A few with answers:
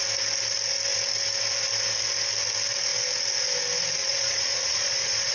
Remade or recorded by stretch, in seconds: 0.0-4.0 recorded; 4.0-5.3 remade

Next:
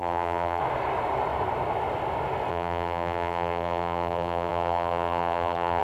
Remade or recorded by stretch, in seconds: 0.0-0.6 remade; 0.6-2.5 recorded; 2.5-5.8 remade

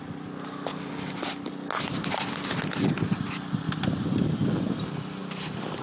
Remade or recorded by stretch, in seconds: 0.0-5.8 recorded

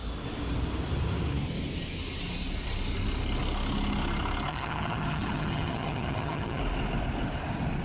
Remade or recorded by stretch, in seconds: 0.0-4.5 recorded; 4.5-6.6 remade; 6.6-7.8 recorded

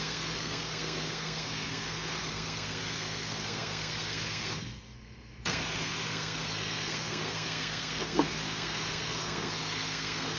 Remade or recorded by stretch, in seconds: 0.0-10.4 remade

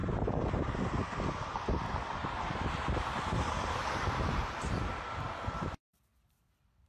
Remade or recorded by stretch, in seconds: 0.0-2.2 recorded; 2.2-4.9 remade; 4.9-6.9 recorded

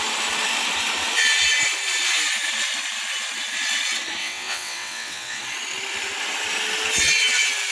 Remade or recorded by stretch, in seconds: 0.0-4.2 recorded; 4.2-5.4 remade; 5.4-7.7 recorded